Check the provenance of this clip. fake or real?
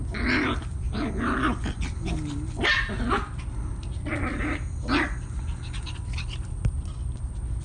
real